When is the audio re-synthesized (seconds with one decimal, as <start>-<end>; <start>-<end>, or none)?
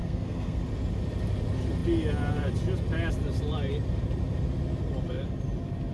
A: 0.0-0.6